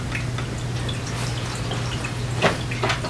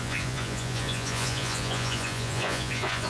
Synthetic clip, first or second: second